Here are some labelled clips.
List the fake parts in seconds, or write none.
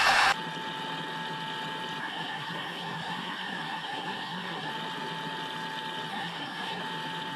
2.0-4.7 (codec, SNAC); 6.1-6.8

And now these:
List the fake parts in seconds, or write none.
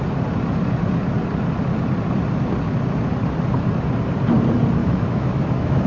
4.8-5.9 (autoencoder, DAC-VAE)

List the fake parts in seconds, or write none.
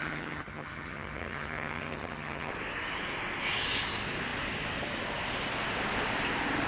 0.0-2.5 (vocoder, HiFi-GAN)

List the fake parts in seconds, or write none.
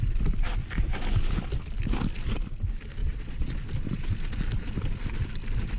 3.0-3.5 (vocoder, Vocos)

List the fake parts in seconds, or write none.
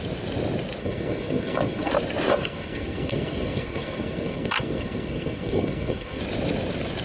0.8-1.9 (codec, SNAC); 2.3-6.2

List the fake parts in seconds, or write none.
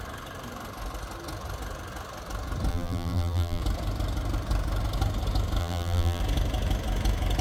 2.7-3.6 (vocoder, BigVGAN v2); 5.6-6.2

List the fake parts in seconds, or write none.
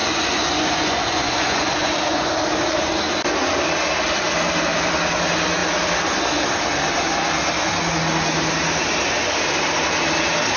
0.0-2.3 (vocoder, Vocos)